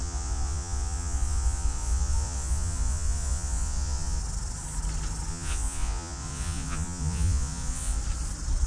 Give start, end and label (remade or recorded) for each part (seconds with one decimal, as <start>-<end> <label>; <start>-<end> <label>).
0.0-4.2 remade; 4.2-5.3 recorded; 5.3-8.0 remade; 8.0-8.7 recorded